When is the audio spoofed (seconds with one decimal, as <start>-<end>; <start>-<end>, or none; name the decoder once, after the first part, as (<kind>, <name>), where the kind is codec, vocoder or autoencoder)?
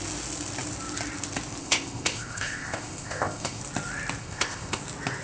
1.6-3.6 (codec, ZipCodec); 4.2-4.8